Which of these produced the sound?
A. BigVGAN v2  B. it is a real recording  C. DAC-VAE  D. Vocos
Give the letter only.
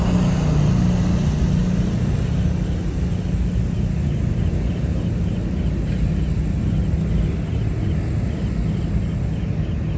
B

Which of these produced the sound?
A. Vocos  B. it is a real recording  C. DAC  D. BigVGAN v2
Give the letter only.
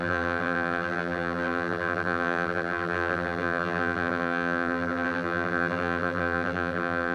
D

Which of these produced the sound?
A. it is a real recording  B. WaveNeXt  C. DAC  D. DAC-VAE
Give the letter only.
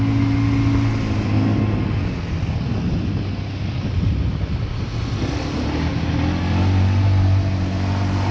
A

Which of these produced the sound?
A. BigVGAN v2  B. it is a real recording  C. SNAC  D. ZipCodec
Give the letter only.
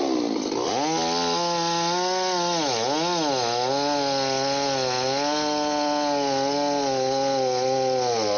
B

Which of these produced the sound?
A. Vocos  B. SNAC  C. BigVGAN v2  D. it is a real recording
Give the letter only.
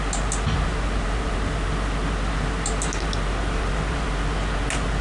D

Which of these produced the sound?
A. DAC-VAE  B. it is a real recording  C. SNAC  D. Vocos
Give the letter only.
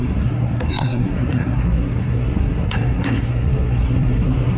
C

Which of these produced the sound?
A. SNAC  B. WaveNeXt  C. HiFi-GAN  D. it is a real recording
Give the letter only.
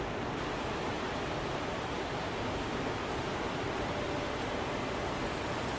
D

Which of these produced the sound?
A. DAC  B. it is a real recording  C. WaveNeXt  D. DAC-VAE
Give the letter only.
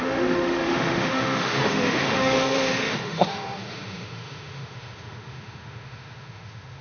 D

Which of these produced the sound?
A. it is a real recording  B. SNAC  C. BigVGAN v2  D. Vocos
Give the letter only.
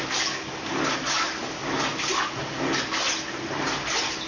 A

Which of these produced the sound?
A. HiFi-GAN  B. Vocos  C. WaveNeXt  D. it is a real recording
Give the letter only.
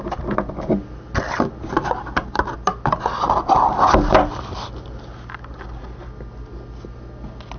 D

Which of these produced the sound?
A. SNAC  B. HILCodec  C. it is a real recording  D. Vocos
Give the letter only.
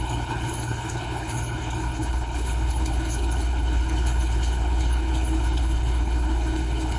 B